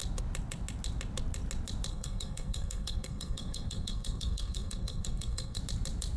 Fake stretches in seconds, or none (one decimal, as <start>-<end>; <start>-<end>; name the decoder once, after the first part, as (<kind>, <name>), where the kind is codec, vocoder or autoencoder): 1.9-5.6 (codec, SNAC)